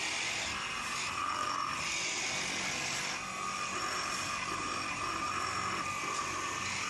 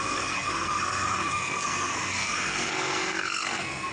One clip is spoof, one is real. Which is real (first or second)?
first